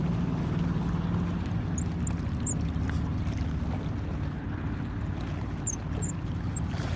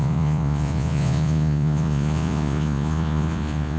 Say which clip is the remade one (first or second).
second